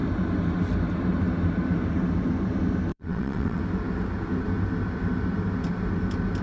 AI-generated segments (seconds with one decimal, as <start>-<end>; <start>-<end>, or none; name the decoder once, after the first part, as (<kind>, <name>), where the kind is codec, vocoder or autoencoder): 2.9-3.6 (vocoder, WaveNeXt)